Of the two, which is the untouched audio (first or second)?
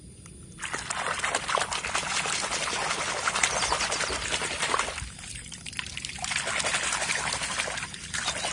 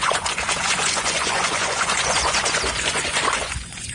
first